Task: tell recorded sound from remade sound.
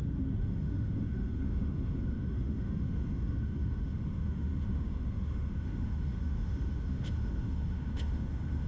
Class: remade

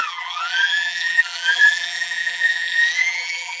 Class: remade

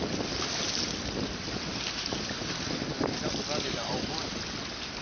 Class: recorded